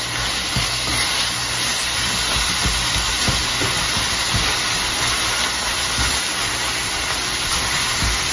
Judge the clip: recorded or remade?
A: recorded